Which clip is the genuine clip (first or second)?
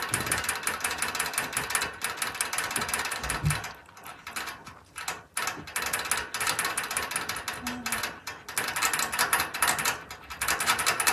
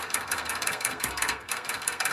first